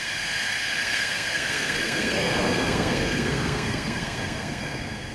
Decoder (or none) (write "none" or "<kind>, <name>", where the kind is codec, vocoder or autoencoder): codec, SNAC